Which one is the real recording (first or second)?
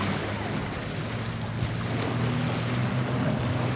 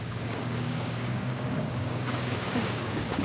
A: first